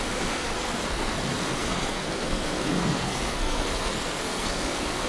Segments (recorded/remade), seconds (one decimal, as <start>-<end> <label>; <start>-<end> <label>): 0.0-5.1 remade